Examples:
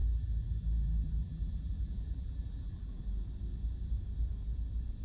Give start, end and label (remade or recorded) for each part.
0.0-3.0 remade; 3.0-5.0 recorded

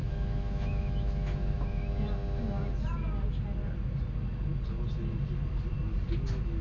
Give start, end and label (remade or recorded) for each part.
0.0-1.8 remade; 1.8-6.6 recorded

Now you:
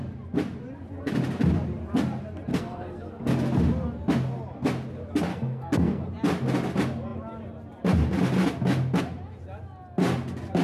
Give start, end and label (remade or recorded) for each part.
0.0-2.5 recorded; 2.5-3.3 remade; 3.3-5.3 recorded; 5.3-6.0 remade; 6.0-10.6 recorded

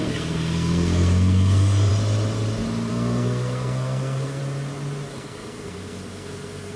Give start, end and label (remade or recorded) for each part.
0.0-1.9 remade; 1.9-2.9 recorded; 2.9-4.4 remade; 4.4-5.1 recorded; 5.1-6.8 remade

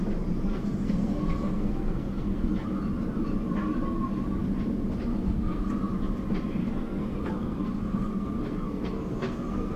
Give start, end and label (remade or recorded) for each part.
0.0-0.5 recorded; 0.5-2.5 remade; 2.5-5.1 recorded; 5.1-5.7 remade; 5.7-6.6 recorded; 6.6-9.8 remade

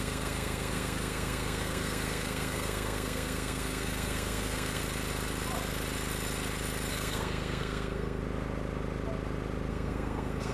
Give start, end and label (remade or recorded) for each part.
0.0-4.8 remade; 4.8-6.9 recorded; 6.9-8.2 remade; 8.2-9.7 recorded; 9.7-10.5 remade